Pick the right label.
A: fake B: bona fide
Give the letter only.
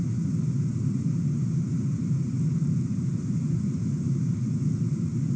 A